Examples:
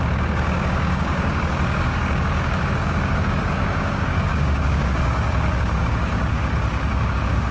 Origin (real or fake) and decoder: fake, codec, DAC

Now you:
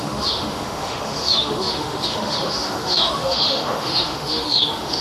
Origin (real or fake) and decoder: fake, autoencoder, DAC-VAE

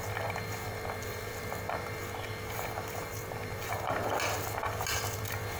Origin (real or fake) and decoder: real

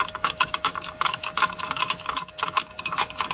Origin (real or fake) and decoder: fake, autoencoder, DAC-VAE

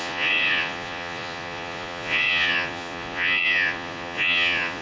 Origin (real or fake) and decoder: fake, vocoder, Vocos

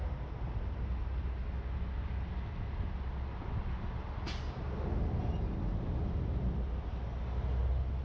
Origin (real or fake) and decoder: real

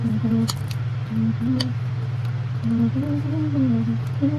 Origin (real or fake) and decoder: real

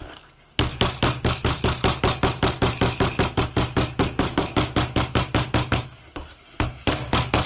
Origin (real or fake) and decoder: real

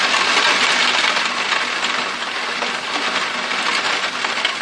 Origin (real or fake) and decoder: real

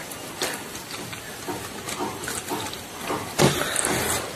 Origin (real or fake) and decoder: real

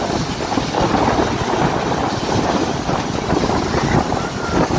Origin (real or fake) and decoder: real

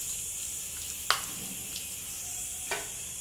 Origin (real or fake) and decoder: real